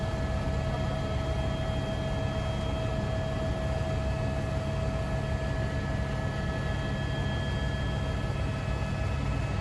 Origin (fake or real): real